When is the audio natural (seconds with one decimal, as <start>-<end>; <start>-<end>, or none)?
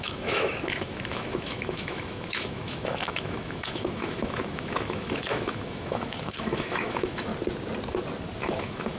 7.3-8.4